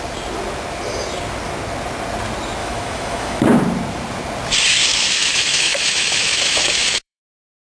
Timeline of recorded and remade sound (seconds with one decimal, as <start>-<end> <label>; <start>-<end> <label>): 0.0-2.6 recorded; 2.6-3.4 remade; 3.4-4.9 recorded; 4.9-7.2 remade; 7.2-7.7 recorded

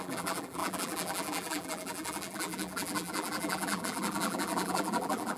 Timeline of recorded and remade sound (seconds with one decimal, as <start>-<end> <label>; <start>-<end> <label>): 0.0-5.4 remade

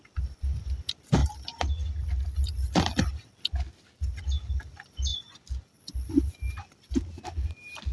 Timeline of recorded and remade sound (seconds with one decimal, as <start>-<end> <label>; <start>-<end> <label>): 0.0-5.1 recorded; 5.1-5.9 remade; 5.9-7.9 recorded

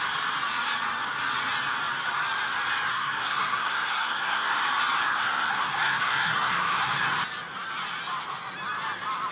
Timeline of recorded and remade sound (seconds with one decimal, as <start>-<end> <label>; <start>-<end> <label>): 0.0-2.9 recorded; 2.9-4.5 remade; 4.5-5.1 recorded; 5.1-6.9 remade; 6.9-9.3 recorded

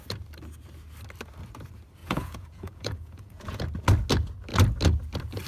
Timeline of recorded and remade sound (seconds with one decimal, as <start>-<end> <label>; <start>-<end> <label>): 0.0-2.0 recorded; 2.0-3.6 remade; 3.6-5.5 recorded

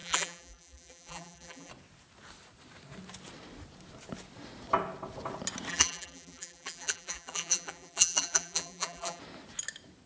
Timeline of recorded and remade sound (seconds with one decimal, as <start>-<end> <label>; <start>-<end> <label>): 0.0-1.7 remade; 1.7-5.7 recorded; 5.7-9.2 remade; 9.2-10.1 recorded

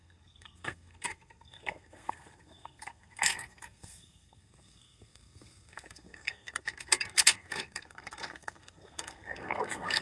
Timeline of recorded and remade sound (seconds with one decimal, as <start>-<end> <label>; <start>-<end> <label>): 0.0-10.0 remade